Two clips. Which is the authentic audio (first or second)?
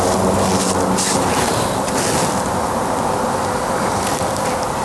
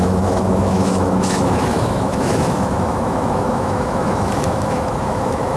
first